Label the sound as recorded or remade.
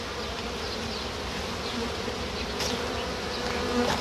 recorded